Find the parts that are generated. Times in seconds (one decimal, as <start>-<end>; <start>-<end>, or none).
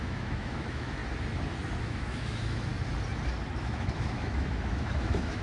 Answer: 0.0-1.0; 1.8-2.7; 3.6-5.4